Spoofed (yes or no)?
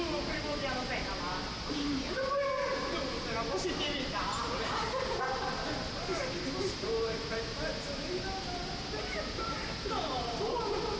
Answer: no